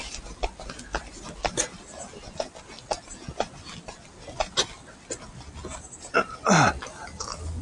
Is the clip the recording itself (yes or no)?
yes